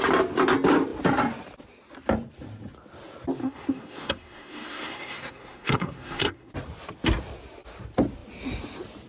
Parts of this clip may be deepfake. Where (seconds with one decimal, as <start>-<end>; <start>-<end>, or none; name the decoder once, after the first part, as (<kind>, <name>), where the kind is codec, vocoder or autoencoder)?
3.4-6.5 (codec, SNAC)

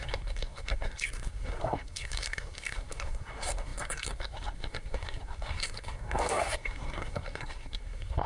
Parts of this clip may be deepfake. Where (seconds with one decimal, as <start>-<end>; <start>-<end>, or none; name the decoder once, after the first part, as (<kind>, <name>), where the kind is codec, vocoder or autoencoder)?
0.0-8.3 (codec, SNAC)

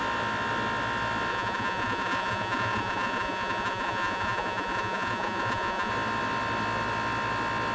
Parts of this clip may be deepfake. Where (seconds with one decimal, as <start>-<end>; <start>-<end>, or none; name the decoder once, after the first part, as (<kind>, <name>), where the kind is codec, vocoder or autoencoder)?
1.3-5.9 (vocoder, Vocos)

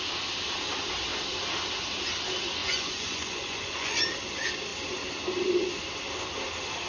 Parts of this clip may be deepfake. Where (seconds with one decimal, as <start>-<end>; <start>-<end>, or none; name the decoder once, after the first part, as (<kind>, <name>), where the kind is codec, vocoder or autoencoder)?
2.6-4.0 (vocoder, Vocos)

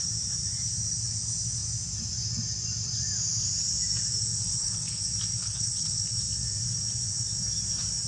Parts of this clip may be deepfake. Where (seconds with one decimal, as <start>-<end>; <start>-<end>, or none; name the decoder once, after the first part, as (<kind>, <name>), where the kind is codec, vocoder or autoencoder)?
4.5-5.0 (codec, HILCodec); 5.4-6.0

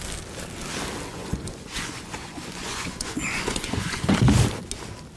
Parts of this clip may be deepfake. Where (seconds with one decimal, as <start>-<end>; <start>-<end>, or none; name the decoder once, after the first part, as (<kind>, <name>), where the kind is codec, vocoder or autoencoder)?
1.1-4.2 (vocoder, Vocos)

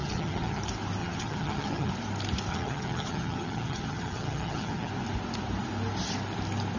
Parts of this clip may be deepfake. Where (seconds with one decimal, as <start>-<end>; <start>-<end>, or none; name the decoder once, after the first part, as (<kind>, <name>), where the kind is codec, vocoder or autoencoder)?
0.0-0.6 (vocoder, HiFi-GAN); 1.0-1.9; 2.5-4.9

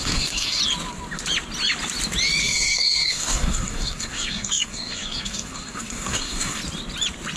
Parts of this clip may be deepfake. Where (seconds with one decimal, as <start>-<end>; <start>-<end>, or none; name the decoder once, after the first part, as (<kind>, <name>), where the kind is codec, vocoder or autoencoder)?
0.0-0.6 (codec, SNAC); 2.4-6.6